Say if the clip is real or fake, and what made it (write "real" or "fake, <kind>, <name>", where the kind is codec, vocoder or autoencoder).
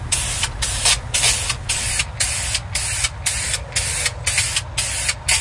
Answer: real